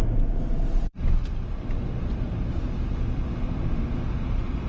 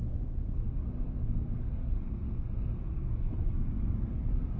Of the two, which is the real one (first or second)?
first